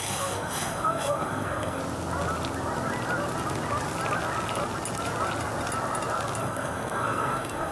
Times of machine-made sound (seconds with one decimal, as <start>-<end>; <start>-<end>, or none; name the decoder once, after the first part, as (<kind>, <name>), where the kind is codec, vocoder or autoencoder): 0.0-1.8 (codec, SNAC); 6.4-7.7